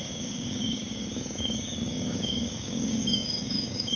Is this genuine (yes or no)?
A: no